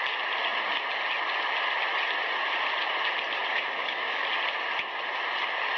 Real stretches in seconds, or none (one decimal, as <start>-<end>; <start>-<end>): 0.0-3.5; 4.2-5.8